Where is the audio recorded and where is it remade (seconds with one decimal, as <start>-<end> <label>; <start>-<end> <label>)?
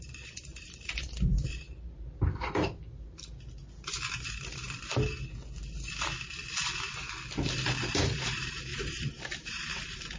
0.0-3.6 remade; 3.6-7.9 recorded; 7.9-10.2 remade